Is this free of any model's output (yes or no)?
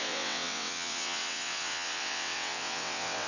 no